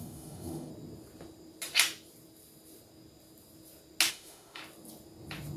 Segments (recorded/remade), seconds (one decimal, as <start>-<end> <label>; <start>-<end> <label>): 0.0-0.7 remade; 0.7-4.1 recorded; 4.1-4.6 remade; 4.6-5.6 recorded